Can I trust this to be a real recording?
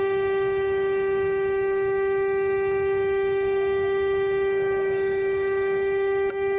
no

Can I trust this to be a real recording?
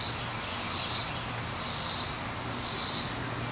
yes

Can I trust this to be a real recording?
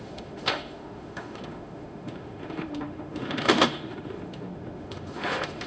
no